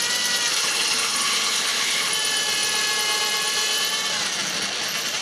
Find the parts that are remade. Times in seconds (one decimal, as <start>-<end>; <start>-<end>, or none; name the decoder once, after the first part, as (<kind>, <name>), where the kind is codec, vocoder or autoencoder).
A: 0.5-2.1 (codec, HILCodec)